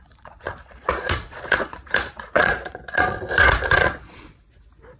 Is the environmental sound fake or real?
fake